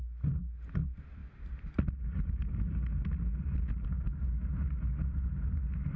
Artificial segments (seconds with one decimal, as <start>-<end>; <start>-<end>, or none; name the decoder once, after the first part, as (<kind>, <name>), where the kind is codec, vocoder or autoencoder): none